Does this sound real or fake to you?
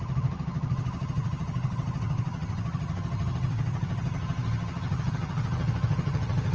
fake